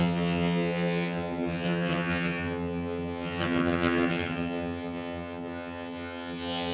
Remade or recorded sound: remade